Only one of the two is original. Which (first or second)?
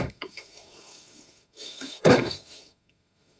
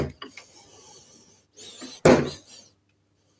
second